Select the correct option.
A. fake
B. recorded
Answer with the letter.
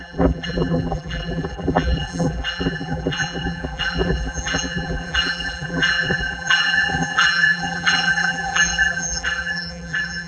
A